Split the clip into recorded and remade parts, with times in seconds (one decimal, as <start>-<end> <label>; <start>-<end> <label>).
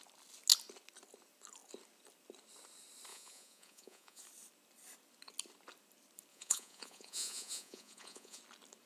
0.0-3.1 recorded; 3.1-4.2 remade; 4.2-6.3 recorded; 6.3-8.4 remade; 8.4-8.9 recorded